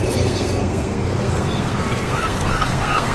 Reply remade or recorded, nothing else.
remade